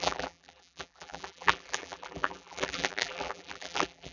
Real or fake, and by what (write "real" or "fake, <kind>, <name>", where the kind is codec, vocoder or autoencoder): fake, vocoder, BigVGAN v2